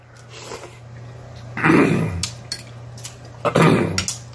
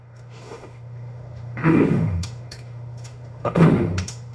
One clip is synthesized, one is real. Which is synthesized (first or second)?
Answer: second